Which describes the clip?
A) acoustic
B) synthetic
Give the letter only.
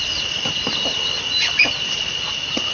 A